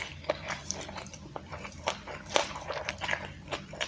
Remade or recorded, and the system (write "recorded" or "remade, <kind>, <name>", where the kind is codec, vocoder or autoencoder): remade, vocoder, BigVGAN v2